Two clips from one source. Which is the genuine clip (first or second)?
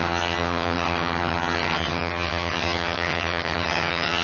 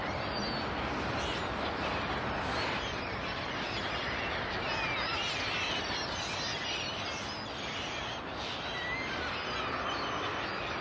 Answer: second